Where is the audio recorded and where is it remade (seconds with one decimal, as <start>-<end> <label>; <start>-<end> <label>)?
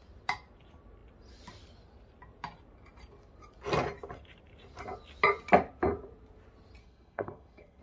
0.0-6.8 recorded; 6.8-7.8 remade